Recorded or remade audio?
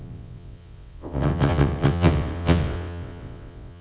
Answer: remade